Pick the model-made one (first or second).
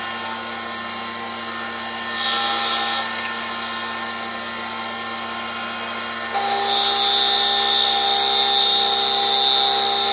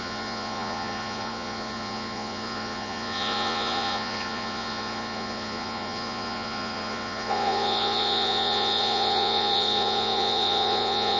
second